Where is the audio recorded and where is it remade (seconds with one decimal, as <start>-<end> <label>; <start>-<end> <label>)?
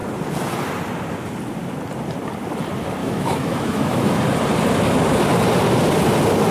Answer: 0.0-3.0 recorded; 3.0-4.2 remade; 4.2-6.5 recorded